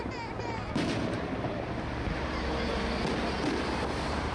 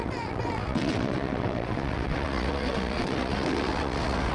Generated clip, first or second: second